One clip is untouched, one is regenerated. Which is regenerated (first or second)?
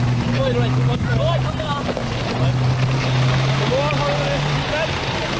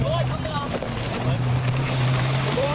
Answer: second